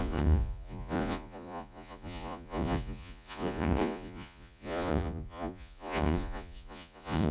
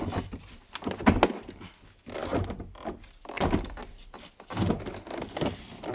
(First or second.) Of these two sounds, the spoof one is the first